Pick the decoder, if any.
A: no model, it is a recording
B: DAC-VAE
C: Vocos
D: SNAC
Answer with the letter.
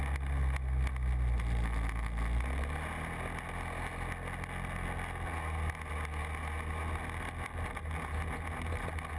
A